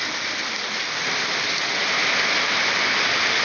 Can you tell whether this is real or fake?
real